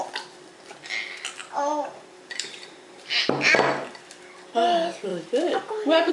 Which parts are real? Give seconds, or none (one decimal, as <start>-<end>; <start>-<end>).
0.0-1.4; 3.1-5.1